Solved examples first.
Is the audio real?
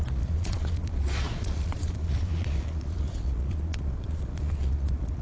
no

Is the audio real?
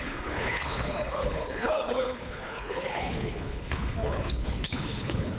no